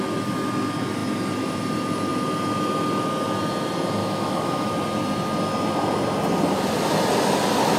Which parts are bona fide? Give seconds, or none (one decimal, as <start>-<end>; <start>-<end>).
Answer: 0.0-4.0; 4.7-7.8